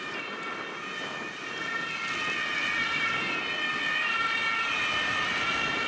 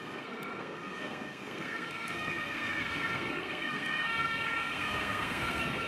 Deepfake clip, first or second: second